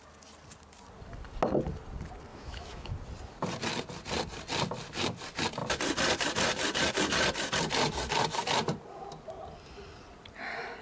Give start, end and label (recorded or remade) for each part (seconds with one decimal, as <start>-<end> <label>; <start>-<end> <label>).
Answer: 0.0-2.3 recorded; 2.3-2.9 remade; 2.9-10.8 recorded